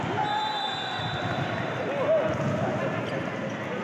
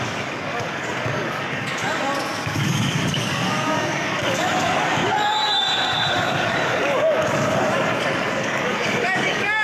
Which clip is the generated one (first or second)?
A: second